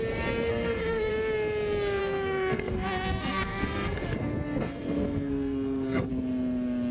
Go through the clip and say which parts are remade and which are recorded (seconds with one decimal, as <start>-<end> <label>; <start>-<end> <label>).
0.0-0.5 recorded; 0.5-1.1 remade; 1.1-2.0 recorded; 2.0-6.1 remade; 6.1-6.9 recorded